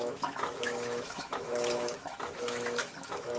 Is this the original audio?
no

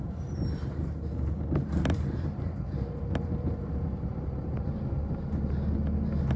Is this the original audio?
yes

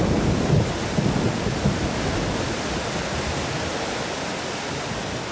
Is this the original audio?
yes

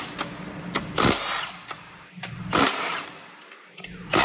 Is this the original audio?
yes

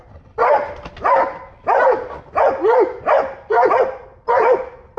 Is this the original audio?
yes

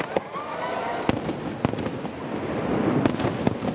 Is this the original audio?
yes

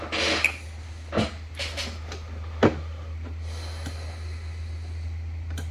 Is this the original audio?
yes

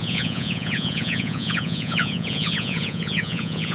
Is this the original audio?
no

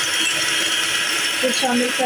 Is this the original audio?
yes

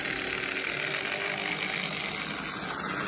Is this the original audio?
yes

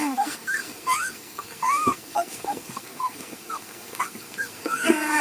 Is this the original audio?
no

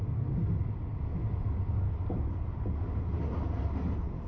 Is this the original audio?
yes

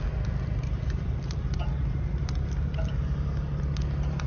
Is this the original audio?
yes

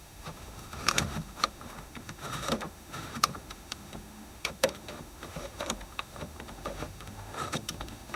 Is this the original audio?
no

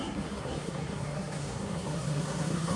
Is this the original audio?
no